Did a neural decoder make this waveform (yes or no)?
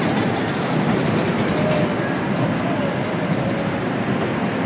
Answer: no